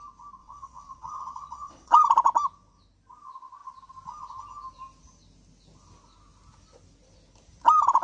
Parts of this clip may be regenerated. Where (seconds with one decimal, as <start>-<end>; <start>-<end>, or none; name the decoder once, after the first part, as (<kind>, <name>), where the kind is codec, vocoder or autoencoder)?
0.4-2.0 (vocoder, WaveNeXt)